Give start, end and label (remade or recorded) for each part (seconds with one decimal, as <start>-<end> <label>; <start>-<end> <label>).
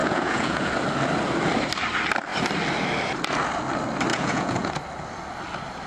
0.0-0.7 remade; 0.7-4.1 recorded; 4.1-4.7 remade; 4.7-5.9 recorded